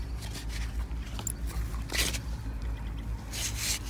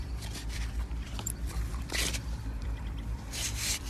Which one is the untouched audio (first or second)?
first